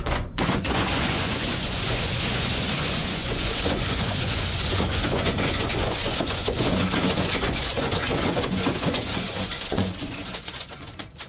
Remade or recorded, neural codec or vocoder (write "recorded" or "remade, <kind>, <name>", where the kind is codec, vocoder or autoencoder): remade, vocoder, Vocos